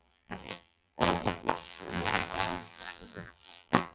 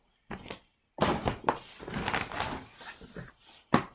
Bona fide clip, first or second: second